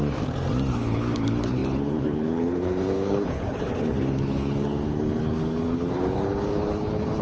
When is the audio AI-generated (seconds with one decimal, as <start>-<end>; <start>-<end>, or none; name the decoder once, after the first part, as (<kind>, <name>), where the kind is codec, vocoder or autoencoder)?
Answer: 0.7-7.2 (codec, HILCodec)